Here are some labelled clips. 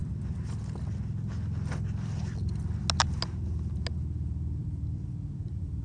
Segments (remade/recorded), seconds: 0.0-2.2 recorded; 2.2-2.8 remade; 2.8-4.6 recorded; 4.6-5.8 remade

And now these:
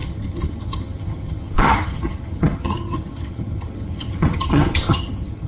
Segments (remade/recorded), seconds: 0.0-5.5 remade